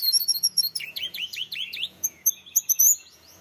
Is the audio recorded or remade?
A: remade